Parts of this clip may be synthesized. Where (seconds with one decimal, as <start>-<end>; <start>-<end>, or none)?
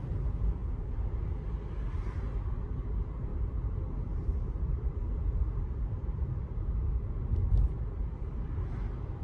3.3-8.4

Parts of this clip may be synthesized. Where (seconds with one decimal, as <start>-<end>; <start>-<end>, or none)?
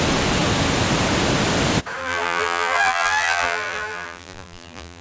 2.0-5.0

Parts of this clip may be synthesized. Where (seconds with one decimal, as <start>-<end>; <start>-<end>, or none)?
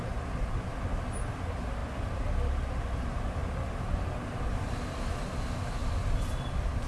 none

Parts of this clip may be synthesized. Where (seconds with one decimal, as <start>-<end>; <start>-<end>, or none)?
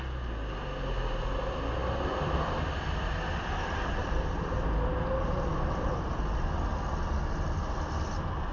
1.8-4.5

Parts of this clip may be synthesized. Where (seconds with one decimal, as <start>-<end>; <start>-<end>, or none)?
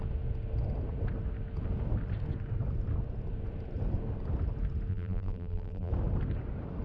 4.9-5.9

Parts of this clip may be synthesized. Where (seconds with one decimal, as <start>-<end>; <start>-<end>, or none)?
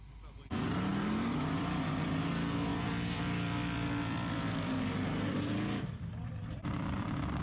0.9-2.3; 2.7-7.4